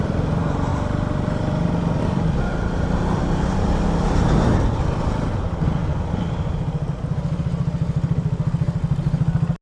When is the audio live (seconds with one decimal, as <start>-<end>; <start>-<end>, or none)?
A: 0.0-9.6